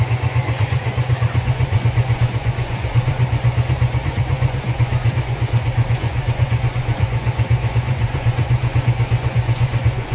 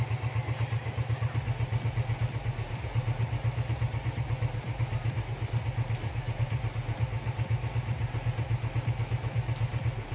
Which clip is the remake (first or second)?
first